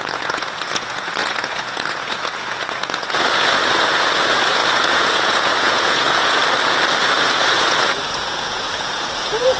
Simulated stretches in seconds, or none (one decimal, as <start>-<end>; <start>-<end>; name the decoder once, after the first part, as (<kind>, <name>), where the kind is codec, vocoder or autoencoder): 0.0-6.4 (vocoder, Vocos); 7.0-9.6